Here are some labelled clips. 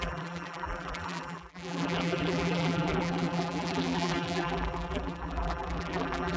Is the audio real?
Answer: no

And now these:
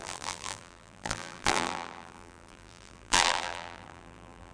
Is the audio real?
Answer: no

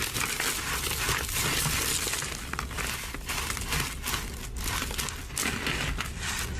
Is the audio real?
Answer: yes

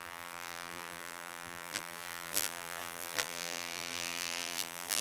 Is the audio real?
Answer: no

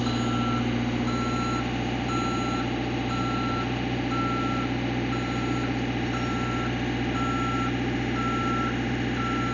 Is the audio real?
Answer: yes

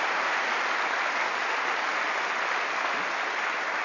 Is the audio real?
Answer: yes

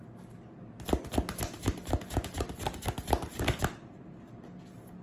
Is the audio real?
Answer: yes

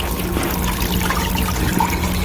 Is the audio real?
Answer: yes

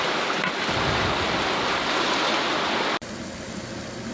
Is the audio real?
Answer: yes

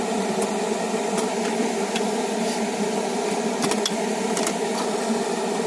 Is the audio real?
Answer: no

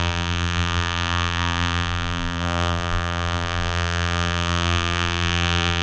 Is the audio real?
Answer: no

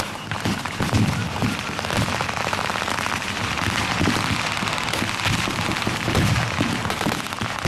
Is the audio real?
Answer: yes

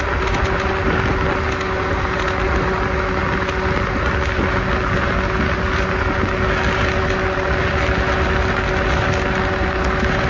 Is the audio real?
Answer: yes